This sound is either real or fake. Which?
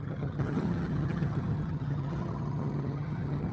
fake